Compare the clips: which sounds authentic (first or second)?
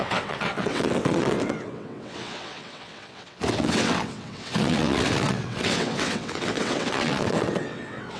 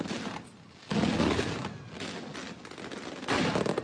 second